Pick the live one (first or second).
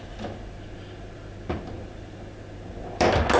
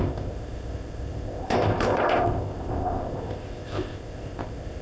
first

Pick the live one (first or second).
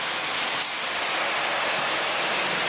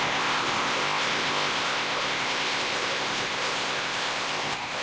first